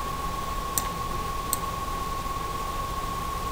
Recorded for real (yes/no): yes